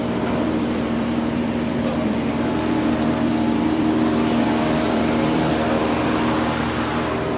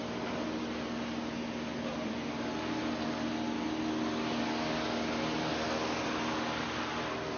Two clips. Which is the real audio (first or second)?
second